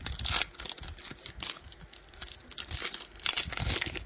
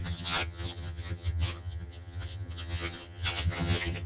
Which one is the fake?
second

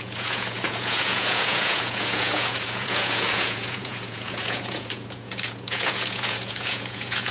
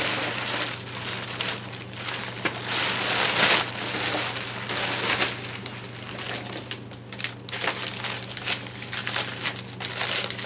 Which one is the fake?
first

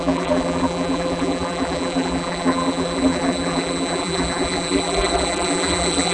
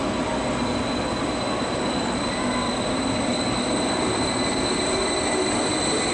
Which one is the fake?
first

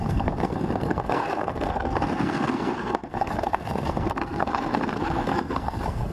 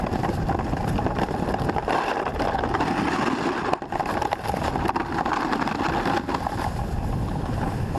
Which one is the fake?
first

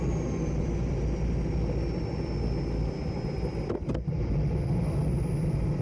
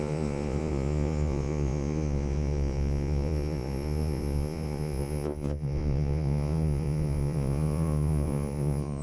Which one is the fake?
second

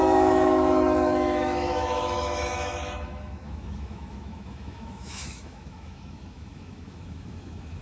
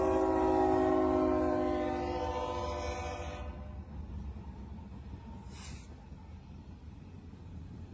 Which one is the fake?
first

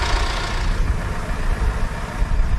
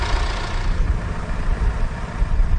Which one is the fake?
second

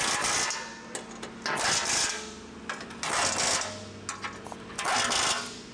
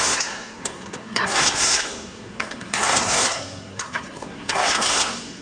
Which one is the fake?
second